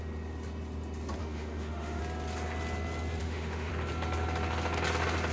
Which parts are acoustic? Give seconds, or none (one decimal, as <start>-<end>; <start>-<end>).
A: 0.0-1.2; 2.0-3.2; 3.7-5.3

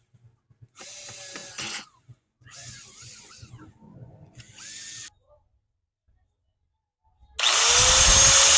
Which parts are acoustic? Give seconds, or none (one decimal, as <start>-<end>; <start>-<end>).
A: 0.0-1.4; 4.5-8.6